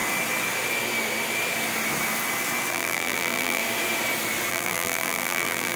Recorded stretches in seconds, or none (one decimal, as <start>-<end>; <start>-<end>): 0.0-2.7; 3.6-4.5